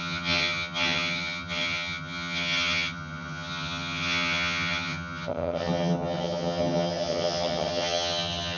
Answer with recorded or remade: remade